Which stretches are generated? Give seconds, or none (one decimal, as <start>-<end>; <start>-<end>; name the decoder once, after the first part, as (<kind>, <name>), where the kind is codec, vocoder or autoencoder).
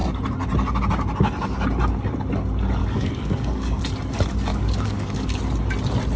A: 2.8-3.8 (codec, DAC); 4.5-5.4